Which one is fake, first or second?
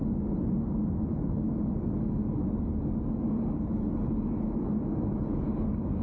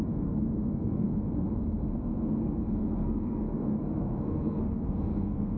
second